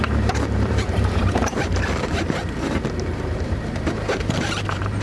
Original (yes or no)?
no